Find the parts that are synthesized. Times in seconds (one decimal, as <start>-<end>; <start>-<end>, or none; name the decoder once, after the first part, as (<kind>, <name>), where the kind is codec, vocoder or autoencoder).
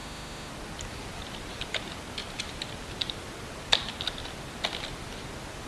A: 0.0-0.5 (autoencoder, DAC-VAE)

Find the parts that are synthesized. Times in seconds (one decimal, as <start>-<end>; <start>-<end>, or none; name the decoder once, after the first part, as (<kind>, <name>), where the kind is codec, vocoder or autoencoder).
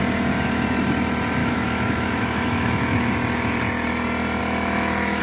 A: 1.4-3.1 (autoencoder, DAC-VAE); 4.4-5.2